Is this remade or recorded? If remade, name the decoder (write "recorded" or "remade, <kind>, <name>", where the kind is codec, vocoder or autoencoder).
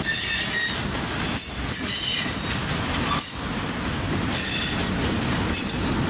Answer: recorded